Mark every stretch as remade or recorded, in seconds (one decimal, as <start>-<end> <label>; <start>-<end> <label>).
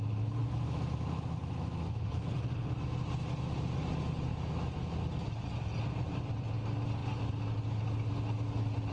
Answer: 0.0-0.4 recorded; 0.4-2.3 remade; 2.3-4.3 recorded; 4.3-5.0 remade; 5.0-8.9 recorded